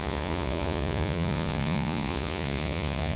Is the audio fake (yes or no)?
yes